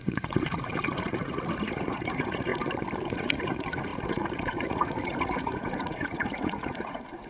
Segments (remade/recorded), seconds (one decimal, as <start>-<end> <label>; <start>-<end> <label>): 0.0-2.5 remade; 2.5-3.1 recorded; 3.1-7.3 remade